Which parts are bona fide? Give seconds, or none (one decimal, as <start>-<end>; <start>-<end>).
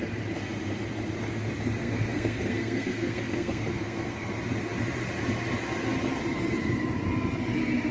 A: 0.0-1.8; 4.3-7.9